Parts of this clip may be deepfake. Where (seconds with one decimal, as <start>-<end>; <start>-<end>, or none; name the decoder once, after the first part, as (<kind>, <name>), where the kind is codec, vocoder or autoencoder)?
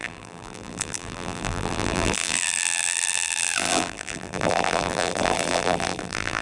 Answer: 0.0-6.4 (vocoder, BigVGAN v2)